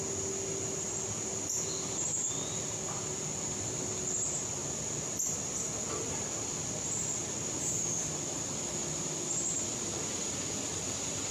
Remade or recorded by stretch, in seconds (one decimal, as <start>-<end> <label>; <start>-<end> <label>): 0.0-11.3 recorded